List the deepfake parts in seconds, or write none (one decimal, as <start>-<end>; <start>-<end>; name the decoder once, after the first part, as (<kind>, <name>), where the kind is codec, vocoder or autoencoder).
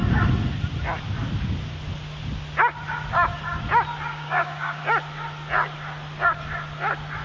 4.1-4.8 (codec, DAC)